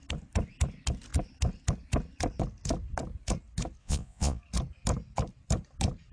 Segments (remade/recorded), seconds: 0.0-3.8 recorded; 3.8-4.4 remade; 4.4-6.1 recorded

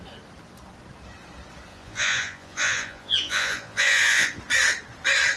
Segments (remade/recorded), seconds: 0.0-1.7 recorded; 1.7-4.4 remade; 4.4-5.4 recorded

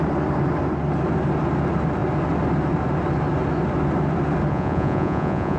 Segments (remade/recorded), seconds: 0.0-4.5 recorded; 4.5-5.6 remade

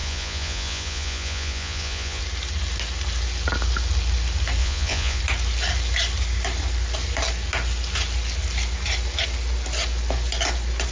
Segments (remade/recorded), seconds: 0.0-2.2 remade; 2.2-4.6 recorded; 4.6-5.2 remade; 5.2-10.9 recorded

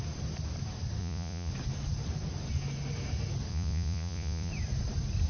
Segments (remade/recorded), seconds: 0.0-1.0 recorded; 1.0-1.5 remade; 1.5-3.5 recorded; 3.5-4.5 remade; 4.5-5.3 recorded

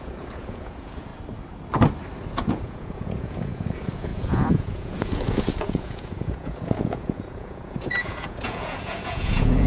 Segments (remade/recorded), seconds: 0.0-1.1 remade; 1.1-2.2 recorded; 2.2-9.7 remade